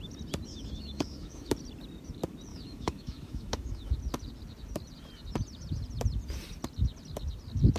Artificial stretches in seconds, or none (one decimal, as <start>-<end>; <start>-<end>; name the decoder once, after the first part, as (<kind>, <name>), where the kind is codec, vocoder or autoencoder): 0.5-1.5 (autoencoder, DAC-VAE); 2.5-3.9